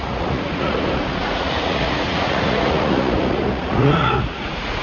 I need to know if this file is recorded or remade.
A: remade